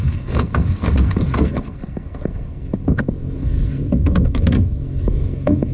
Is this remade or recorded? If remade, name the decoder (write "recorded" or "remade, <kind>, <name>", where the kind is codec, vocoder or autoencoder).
remade, codec, SNAC